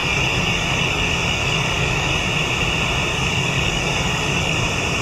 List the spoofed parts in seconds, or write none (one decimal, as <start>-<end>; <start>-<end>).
0.0-2.2; 3.1-4.6